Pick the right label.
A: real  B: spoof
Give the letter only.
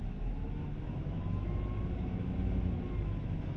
B